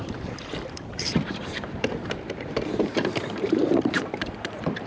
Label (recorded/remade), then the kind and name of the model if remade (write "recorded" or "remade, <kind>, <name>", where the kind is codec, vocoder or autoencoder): remade, vocoder, BigVGAN v2